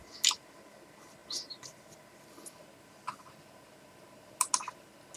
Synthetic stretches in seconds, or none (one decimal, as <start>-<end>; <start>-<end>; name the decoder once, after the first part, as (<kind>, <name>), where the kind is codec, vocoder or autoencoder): none